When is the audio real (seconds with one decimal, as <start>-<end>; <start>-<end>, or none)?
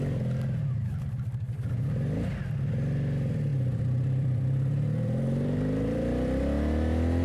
0.0-3.5; 6.4-7.2